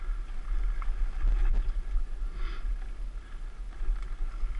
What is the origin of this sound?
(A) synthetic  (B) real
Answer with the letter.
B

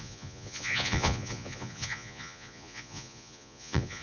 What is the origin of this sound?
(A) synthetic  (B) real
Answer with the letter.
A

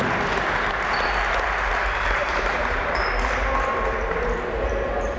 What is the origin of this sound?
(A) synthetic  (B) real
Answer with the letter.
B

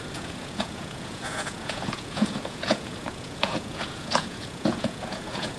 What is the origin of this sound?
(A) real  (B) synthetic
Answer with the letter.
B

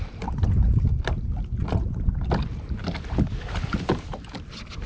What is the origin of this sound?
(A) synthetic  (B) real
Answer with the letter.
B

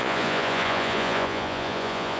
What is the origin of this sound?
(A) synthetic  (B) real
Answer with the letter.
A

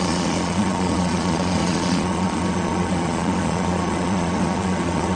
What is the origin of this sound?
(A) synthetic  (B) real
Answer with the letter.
A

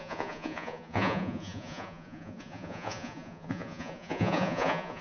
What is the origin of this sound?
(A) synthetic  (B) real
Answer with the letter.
A